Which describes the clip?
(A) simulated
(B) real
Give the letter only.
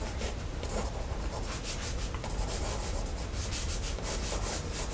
B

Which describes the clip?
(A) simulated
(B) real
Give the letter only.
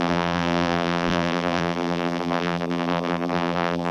A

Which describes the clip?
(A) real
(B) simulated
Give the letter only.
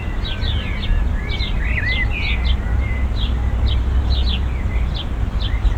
A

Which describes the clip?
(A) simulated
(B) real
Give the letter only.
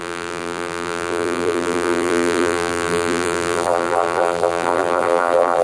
A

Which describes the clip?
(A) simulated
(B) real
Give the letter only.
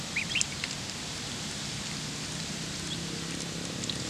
B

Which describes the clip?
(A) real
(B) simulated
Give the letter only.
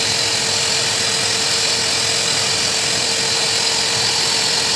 A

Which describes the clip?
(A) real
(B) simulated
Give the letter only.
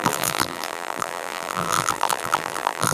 B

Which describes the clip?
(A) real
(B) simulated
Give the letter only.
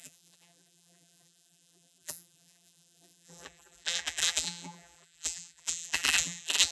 B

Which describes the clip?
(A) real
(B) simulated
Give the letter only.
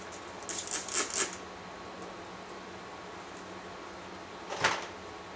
A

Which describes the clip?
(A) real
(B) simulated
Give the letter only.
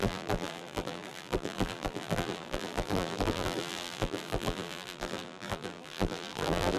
B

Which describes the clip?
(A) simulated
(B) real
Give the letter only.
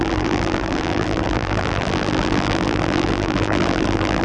A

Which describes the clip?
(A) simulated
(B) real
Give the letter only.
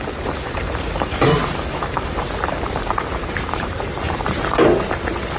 A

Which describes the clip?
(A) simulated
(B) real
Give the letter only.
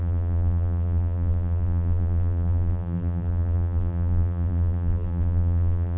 A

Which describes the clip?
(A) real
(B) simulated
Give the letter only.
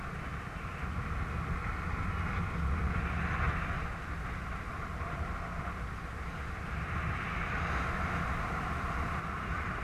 A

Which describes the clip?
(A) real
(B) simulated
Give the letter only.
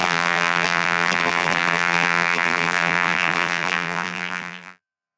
B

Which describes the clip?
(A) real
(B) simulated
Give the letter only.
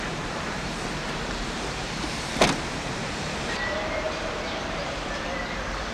B